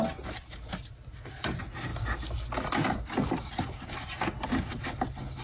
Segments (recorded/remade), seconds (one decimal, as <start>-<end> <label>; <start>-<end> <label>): 0.0-5.4 recorded